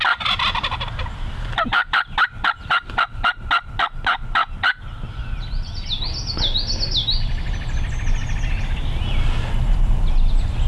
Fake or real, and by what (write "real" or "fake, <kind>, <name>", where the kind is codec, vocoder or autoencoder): real